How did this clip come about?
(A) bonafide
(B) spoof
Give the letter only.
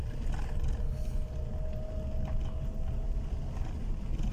A